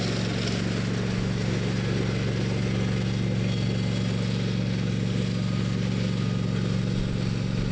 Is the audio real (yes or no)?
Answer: yes